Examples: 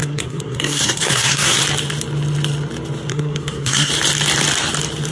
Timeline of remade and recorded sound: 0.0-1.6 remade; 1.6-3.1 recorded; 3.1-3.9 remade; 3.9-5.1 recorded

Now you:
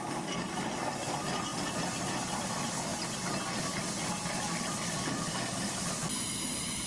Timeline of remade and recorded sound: 0.0-6.9 recorded

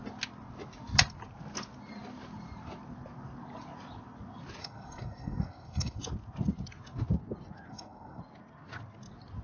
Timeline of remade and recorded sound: 0.0-4.6 recorded; 4.6-6.0 remade; 6.0-7.7 recorded; 7.7-8.2 remade; 8.2-9.4 recorded